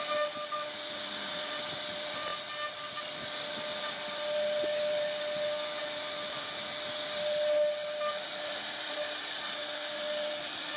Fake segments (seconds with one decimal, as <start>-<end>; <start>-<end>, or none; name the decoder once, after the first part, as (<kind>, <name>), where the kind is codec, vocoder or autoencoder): none